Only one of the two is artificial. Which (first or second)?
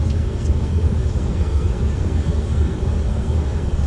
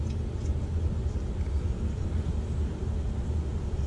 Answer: first